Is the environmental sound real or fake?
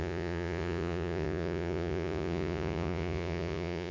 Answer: fake